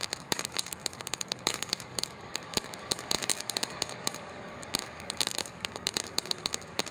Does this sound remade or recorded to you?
remade